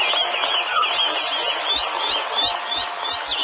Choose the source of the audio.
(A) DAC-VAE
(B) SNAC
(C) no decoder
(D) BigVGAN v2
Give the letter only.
C